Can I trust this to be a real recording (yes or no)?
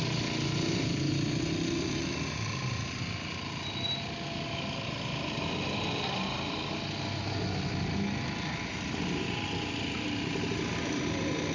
yes